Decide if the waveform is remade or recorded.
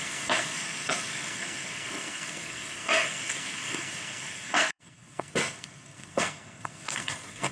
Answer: remade